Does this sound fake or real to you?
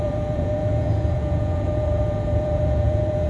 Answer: fake